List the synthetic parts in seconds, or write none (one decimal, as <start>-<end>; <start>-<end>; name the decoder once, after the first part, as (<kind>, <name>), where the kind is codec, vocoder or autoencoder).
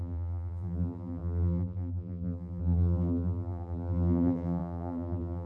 0.0-5.5 (vocoder, BigVGAN v2)